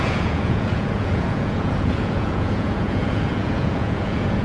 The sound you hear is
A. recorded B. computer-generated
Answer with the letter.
B